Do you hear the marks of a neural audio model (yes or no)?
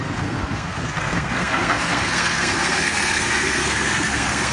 yes